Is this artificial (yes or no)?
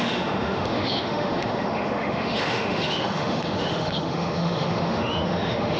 yes